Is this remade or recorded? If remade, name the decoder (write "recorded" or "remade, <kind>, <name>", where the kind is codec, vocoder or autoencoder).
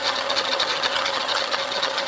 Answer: remade, vocoder, HiFi-GAN